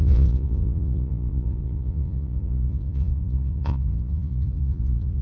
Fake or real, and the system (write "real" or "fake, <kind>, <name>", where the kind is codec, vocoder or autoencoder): fake, vocoder, Vocos